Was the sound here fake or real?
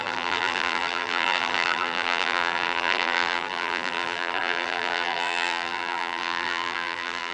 fake